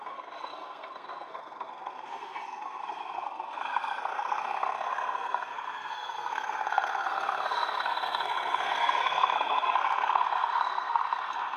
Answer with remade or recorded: remade